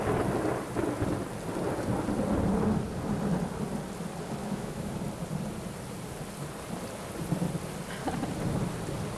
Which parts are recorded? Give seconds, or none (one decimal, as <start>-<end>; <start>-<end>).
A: 0.0-4.4; 4.9-9.2